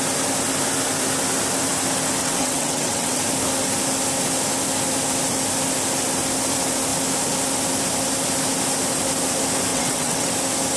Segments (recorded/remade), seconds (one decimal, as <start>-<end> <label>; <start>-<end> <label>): 0.0-2.2 recorded; 2.2-3.2 remade; 3.2-9.7 recorded; 9.7-10.3 remade; 10.3-10.8 recorded

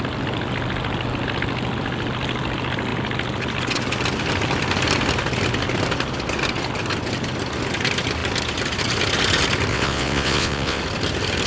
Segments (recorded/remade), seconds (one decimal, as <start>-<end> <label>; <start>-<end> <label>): 0.0-9.7 recorded; 9.7-10.8 remade; 10.8-11.5 recorded

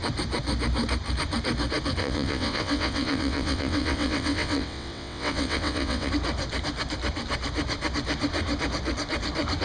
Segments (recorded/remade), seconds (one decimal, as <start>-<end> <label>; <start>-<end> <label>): 0.0-2.0 recorded; 2.0-6.1 remade; 6.1-9.6 recorded

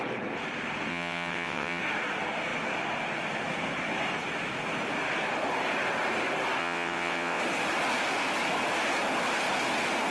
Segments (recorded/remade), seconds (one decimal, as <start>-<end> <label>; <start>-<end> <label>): 0.0-0.9 recorded; 0.9-1.8 remade; 1.8-6.6 recorded; 6.6-7.4 remade; 7.4-10.1 recorded

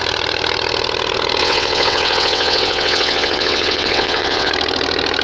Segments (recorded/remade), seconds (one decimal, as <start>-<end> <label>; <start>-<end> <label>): 0.0-1.4 recorded; 1.4-4.5 remade; 4.5-5.2 recorded

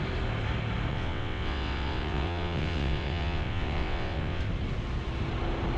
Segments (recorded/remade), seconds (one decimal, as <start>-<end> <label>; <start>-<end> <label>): 0.0-0.9 recorded; 0.9-4.4 remade; 4.4-5.8 recorded